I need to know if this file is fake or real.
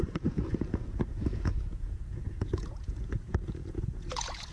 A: fake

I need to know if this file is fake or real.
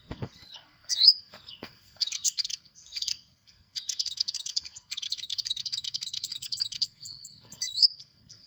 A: fake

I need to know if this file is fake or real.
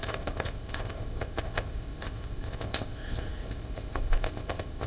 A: fake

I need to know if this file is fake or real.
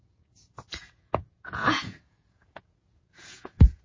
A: fake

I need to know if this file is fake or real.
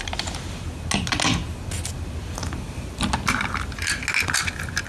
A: real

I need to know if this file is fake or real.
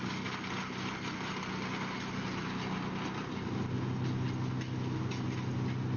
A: real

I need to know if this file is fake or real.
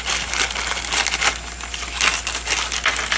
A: real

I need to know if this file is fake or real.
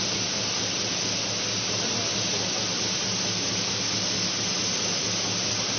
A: real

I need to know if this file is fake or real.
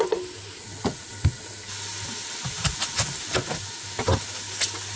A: real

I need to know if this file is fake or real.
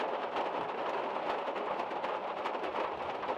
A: real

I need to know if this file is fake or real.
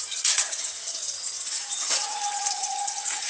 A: fake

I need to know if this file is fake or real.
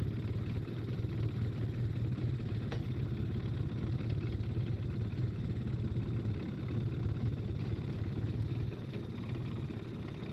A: real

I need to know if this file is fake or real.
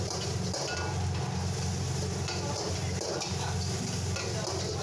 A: real